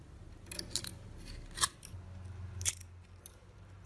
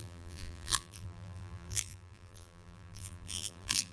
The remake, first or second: second